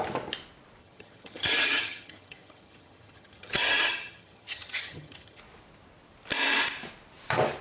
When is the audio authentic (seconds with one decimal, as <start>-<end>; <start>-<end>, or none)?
0.0-0.8; 5.4-7.6